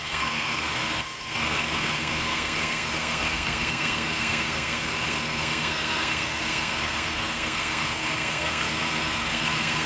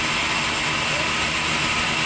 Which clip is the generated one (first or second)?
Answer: first